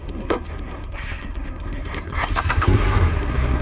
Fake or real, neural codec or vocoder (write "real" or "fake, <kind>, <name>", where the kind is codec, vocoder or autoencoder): fake, codec, SNAC